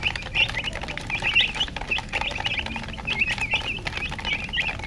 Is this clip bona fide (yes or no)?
yes